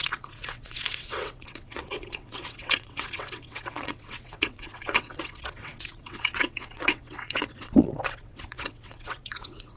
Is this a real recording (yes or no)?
no